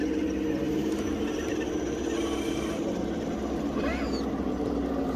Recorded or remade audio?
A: recorded